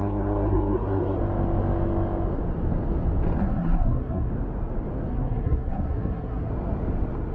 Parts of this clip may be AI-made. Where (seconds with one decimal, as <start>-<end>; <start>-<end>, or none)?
0.0-1.2; 3.4-4.3; 5.1-6.5